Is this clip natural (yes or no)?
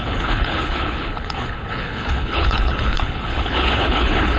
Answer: no